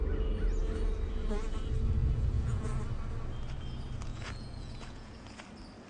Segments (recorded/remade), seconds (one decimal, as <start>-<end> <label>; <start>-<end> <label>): 0.0-2.0 recorded; 2.0-2.8 remade; 2.8-4.1 recorded; 4.1-5.4 remade; 5.4-5.9 recorded